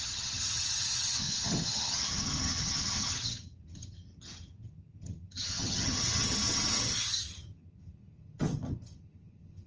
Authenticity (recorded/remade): remade